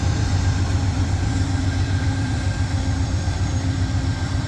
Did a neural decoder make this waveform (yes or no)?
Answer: yes